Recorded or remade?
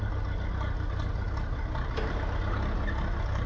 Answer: recorded